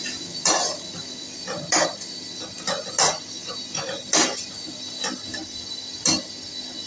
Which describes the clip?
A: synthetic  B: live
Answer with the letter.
B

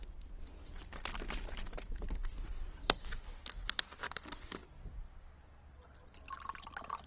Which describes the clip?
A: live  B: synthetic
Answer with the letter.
A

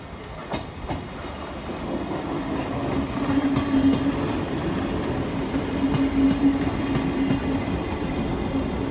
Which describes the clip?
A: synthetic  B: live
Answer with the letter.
B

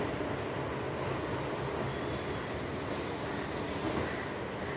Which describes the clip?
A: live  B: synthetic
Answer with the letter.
A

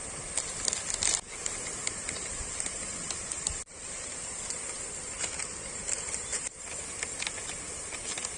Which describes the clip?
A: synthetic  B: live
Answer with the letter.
B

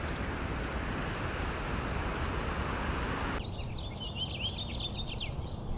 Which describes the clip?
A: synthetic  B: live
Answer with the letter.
B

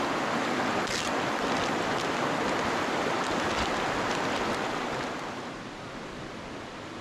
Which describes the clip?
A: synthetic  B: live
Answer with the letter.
B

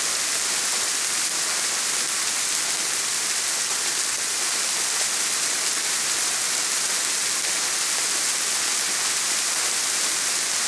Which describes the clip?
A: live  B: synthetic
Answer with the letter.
A